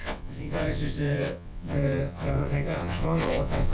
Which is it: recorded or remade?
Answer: remade